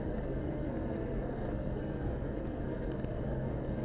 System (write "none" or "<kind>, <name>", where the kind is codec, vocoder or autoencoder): codec, SNAC